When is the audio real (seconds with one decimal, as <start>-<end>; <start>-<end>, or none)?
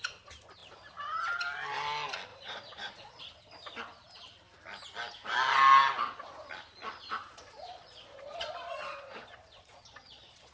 0.0-2.3; 3.2-7.2